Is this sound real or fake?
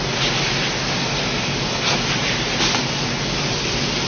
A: real